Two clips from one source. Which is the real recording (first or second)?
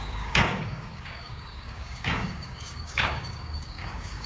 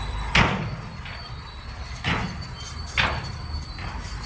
second